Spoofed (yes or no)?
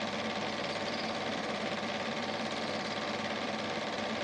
yes